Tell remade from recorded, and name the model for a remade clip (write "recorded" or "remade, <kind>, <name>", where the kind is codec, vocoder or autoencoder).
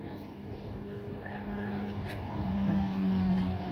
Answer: remade, codec, DAC